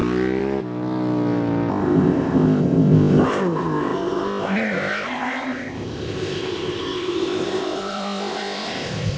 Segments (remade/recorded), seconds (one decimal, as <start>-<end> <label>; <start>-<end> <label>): 0.0-1.7 recorded; 1.7-9.2 remade